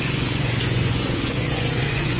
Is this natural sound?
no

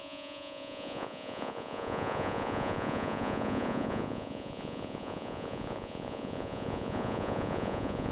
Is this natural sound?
no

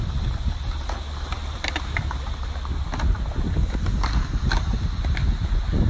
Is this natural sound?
yes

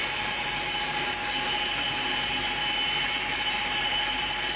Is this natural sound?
yes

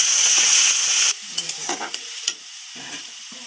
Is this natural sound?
no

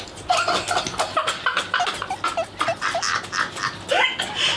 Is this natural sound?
yes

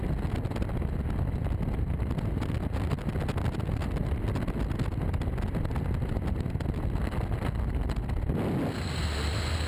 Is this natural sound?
yes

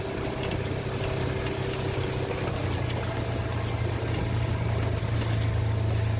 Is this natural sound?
yes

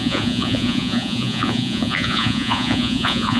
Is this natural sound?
no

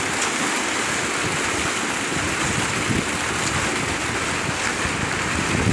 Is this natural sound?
yes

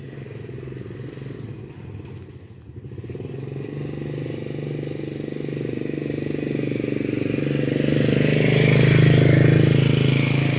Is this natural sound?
yes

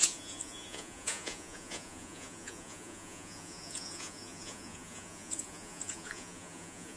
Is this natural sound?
no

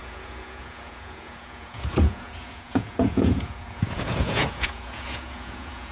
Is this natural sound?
no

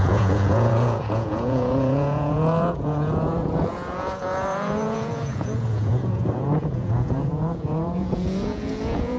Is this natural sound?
no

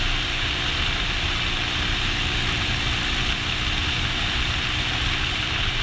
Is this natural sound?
yes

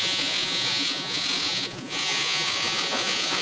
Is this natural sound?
no